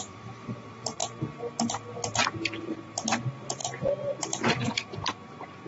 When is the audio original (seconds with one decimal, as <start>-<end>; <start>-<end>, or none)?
1.0-2.6; 3.6-4.2